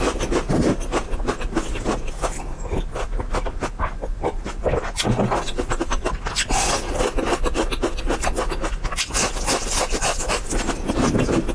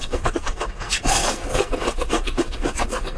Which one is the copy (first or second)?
second